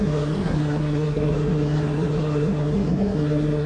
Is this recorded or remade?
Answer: remade